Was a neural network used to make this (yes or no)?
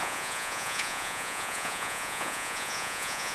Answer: yes